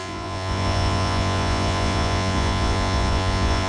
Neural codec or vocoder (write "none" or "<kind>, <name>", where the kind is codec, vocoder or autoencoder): vocoder, Vocos